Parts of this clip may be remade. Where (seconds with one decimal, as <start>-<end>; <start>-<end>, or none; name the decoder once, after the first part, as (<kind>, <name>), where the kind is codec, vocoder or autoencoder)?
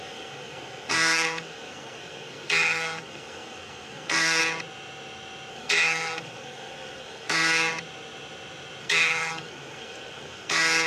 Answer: 0.0-4.4 (codec, SNAC); 5.5-7.7; 8.8-10.9